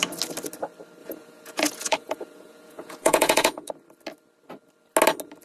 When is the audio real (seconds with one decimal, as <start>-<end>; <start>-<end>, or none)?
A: 0.0-1.0; 3.7-5.4